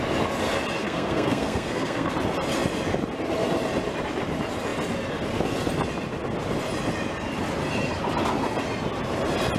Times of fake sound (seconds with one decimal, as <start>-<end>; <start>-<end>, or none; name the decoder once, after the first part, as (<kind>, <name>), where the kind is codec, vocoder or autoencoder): 0.8-2.1 (codec, SNAC)